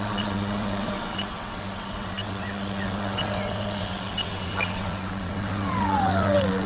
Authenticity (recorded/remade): remade